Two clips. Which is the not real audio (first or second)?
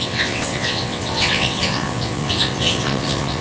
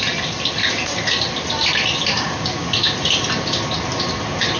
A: first